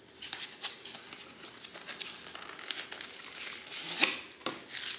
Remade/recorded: recorded